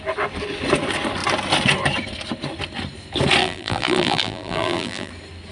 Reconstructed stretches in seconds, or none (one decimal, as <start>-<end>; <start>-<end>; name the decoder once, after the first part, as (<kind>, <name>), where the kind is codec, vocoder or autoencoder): 3.4-5.1 (vocoder, BigVGAN v2)